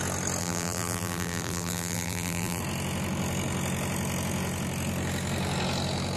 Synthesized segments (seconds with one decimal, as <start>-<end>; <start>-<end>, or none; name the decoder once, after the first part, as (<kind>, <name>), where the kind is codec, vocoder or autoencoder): 0.4-2.6 (vocoder, BigVGAN v2)